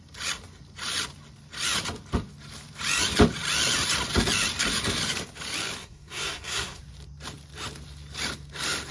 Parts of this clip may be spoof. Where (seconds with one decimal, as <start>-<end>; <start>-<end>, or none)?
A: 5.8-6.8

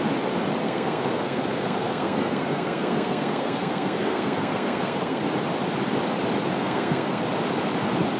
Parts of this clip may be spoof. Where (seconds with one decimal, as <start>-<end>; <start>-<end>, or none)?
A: 0.6-5.2; 6.6-7.2

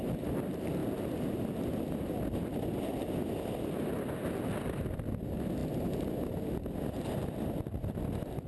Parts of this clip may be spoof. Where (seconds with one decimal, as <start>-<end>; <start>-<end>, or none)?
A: none